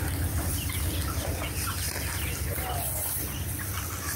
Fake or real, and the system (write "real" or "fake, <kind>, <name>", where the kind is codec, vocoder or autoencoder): real